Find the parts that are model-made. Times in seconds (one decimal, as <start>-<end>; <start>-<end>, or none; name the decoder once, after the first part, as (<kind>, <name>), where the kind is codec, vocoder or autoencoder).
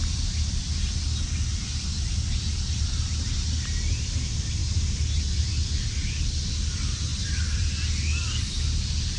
none